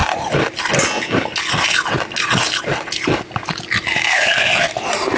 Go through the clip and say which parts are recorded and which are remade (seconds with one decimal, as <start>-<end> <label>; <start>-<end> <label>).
0.0-5.2 recorded